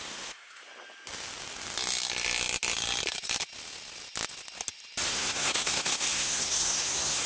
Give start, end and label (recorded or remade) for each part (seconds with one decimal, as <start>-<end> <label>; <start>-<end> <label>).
0.0-0.7 remade; 0.7-5.1 recorded; 5.1-7.3 remade